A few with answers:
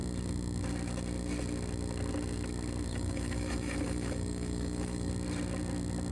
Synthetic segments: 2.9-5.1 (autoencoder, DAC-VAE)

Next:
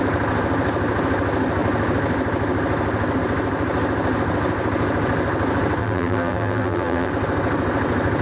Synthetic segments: 5.8-7.1 (vocoder, BigVGAN v2)

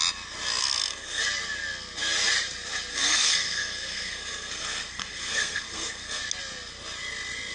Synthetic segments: 0.6-1.2 (codec, SNAC); 2.9-6.2

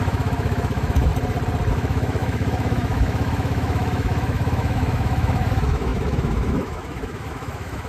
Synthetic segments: 0.0-1.1 (autoencoder, DAC-VAE); 1.7-7.9

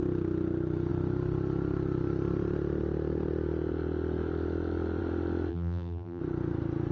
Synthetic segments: 5.5-6.2 (vocoder, BigVGAN v2)

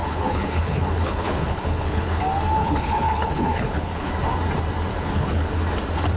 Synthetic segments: 0.0-2.2 (codec, HILCodec); 2.6-4.1; 4.9-5.5

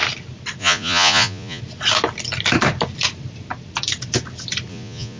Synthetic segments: 0.6-1.6 (vocoder, Vocos); 4.7-5.2